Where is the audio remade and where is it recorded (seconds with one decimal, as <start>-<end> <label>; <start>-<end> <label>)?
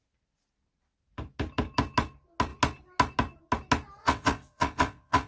0.0-4.0 recorded; 4.0-5.3 remade